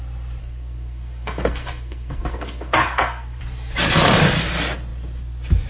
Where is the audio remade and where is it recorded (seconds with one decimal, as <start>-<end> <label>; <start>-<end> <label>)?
0.0-0.4 recorded; 0.4-3.4 remade; 3.4-5.7 recorded